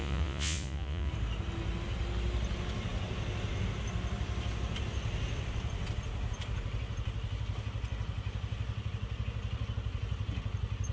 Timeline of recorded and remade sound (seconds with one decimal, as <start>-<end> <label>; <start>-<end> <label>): 0.0-1.1 remade; 1.1-10.9 recorded